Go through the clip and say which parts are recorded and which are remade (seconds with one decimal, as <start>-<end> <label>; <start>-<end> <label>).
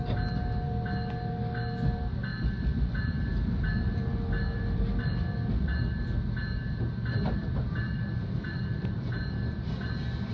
0.0-7.4 recorded; 7.4-9.1 remade; 9.1-10.3 recorded